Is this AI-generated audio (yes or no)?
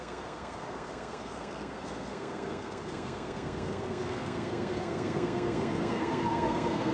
yes